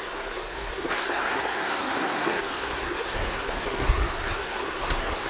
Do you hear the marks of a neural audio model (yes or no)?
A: yes